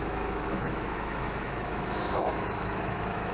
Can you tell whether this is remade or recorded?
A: remade